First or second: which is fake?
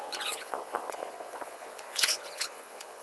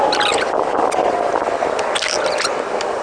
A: first